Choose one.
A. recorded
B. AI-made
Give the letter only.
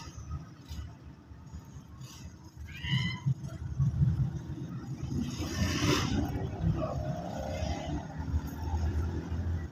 A